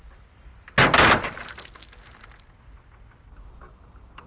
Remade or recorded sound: recorded